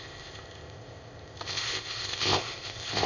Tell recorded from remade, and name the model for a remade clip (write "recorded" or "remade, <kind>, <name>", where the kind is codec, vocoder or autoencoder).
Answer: remade, codec, ZipCodec